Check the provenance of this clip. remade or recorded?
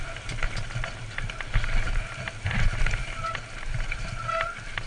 recorded